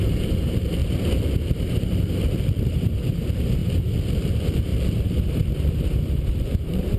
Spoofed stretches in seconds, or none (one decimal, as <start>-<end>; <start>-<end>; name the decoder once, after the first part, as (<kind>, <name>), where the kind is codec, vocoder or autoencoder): 0.0-0.8 (vocoder, BigVGAN v2); 1.4-3.6; 4.3-7.0

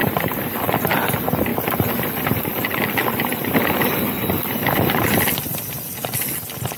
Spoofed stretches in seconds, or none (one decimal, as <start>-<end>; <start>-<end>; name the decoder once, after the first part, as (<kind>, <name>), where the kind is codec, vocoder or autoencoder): 0.0-0.7 (vocoder, BigVGAN v2)

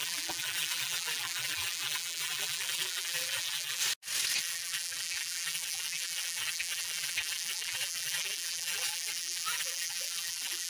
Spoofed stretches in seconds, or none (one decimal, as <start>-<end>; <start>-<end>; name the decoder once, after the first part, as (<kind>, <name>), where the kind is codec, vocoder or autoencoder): 0.0-3.8 (vocoder, BigVGAN v2); 4.4-10.7

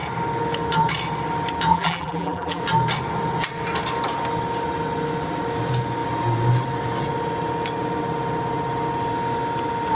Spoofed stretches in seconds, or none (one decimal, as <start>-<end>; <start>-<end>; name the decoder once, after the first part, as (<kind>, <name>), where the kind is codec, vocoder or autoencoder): 1.7-2.6 (vocoder, BigVGAN v2)

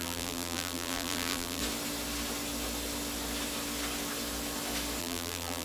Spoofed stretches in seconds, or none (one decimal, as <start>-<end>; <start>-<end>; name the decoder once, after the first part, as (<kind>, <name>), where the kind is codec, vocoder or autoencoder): 0.0-1.6 (vocoder, BigVGAN v2); 5.0-5.6

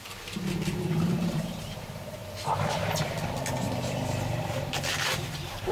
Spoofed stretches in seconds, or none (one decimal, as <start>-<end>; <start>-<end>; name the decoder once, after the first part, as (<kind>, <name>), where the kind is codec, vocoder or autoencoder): 0.0-2.2 (vocoder, BigVGAN v2); 4.4-5.7

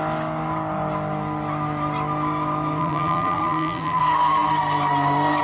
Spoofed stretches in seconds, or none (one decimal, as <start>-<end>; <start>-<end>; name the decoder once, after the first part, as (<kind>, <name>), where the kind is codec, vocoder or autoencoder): 2.8-4.0 (vocoder, BigVGAN v2)

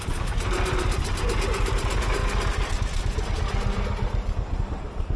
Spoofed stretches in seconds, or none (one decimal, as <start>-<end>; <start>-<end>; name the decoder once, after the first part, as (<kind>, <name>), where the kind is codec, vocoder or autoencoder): 0.0-2.2 (vocoder, BigVGAN v2); 4.6-5.2